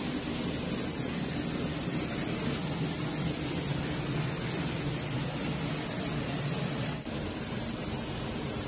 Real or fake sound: real